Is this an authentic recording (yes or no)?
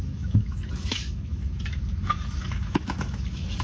no